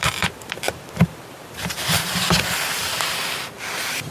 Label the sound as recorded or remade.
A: remade